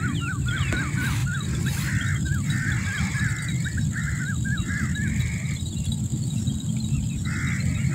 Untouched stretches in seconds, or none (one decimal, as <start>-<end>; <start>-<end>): 0.0-7.9